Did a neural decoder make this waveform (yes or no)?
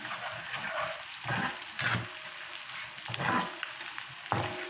no